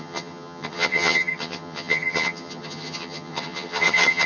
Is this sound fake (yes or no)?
yes